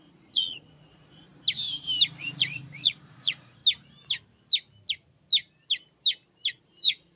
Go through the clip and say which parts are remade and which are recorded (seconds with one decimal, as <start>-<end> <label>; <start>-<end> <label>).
0.0-1.3 remade; 1.3-2.2 recorded; 2.2-3.6 remade; 3.6-6.6 recorded; 6.6-7.2 remade